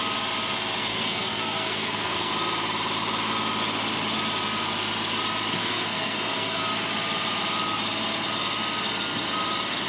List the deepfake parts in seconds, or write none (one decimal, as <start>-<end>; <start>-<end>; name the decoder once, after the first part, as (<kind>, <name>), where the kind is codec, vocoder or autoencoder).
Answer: 0.8-2.3 (codec, SNAC); 5.6-6.6

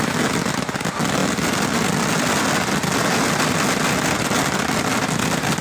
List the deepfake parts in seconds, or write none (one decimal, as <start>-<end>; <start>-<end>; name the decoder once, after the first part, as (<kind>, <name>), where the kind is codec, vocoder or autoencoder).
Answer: none

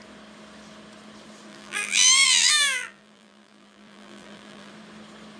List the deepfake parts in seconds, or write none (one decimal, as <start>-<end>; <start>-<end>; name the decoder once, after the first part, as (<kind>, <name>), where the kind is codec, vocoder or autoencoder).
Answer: 1.5-4.7 (vocoder, BigVGAN v2)

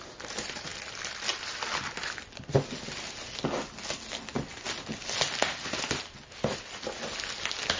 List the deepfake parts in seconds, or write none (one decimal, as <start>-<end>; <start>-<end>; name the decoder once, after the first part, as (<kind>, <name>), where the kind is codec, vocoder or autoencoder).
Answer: none